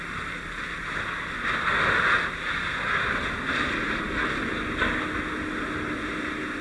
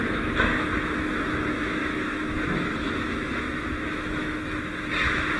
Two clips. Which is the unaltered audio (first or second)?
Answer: first